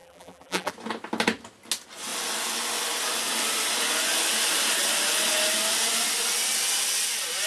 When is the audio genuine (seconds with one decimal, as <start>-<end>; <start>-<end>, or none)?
0.7-7.5